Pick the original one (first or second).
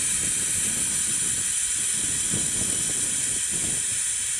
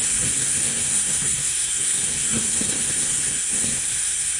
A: first